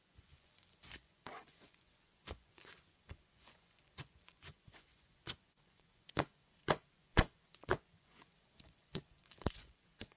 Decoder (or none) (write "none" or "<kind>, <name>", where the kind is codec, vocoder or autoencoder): vocoder, Vocos